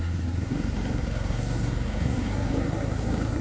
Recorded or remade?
remade